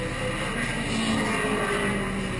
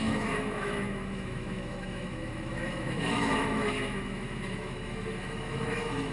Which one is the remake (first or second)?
second